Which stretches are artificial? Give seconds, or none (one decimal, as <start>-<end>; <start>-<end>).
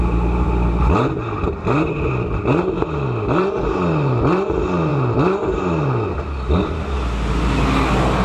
none